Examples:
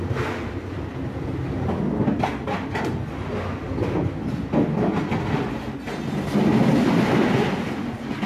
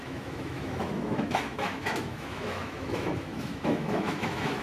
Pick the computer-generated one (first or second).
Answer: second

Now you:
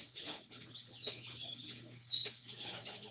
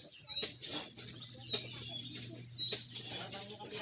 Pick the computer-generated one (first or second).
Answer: first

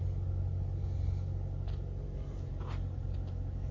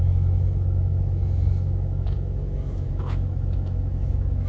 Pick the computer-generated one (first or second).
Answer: second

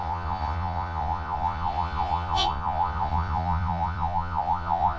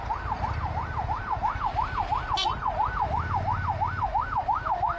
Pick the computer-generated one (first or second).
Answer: first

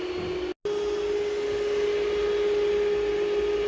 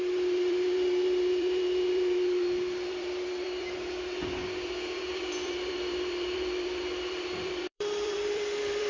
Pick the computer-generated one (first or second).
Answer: second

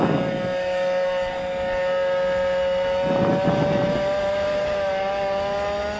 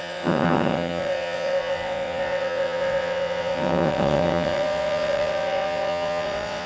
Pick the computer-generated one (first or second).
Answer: second